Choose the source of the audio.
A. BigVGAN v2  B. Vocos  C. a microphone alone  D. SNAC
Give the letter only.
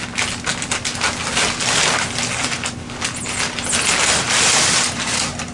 C